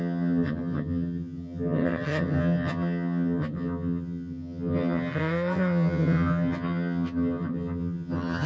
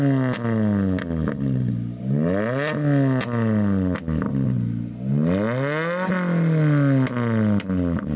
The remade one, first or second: first